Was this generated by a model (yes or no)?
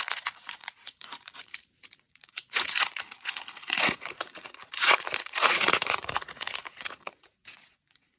yes